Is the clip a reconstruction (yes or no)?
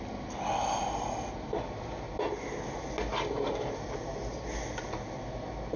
no